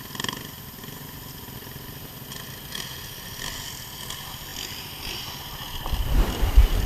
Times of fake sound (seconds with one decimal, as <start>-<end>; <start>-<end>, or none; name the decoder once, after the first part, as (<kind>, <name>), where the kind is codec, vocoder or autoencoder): none